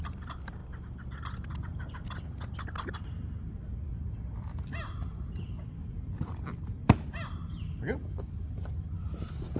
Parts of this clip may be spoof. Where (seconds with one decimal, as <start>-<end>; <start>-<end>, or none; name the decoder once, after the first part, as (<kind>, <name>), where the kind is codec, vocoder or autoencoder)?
0.0-0.6 (vocoder, BigVGAN v2); 5.4-9.6